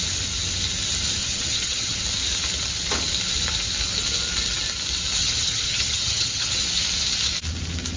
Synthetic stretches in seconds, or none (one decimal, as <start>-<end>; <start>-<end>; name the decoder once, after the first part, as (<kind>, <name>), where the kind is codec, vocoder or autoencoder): 1.2-2.0 (vocoder, HiFi-GAN); 5.2-6.6